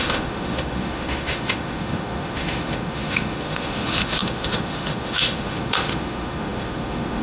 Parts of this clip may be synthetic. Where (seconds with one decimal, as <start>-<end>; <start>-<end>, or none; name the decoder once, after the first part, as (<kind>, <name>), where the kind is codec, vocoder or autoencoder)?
0.0-7.2 (autoencoder, DAC-VAE)